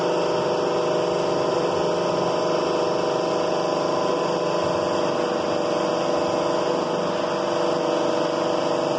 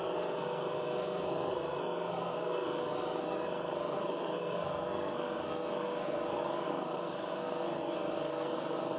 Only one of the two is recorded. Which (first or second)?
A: first